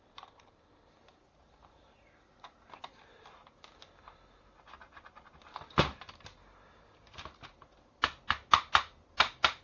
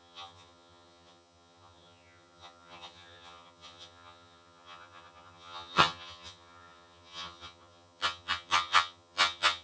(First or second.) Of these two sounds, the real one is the first